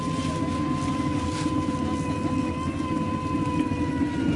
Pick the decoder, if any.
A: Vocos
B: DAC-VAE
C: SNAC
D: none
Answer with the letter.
D